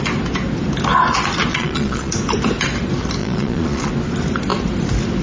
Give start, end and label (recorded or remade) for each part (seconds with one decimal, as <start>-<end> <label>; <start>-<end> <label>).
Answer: 0.0-1.5 recorded; 1.5-2.1 remade; 2.1-3.2 recorded; 3.2-3.9 remade; 3.9-5.2 recorded